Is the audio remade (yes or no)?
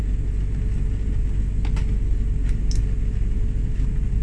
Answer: no